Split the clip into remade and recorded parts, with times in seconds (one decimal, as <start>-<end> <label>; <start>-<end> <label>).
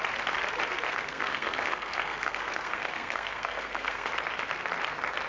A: 0.0-0.9 recorded; 0.9-4.1 remade; 4.1-5.3 recorded